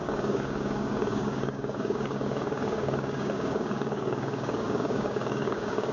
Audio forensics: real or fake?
fake